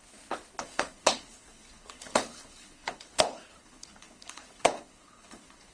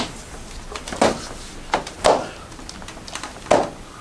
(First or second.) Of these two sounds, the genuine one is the second